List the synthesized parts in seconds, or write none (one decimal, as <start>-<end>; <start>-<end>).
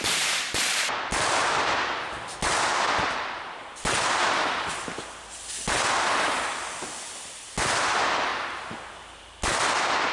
8.3-8.9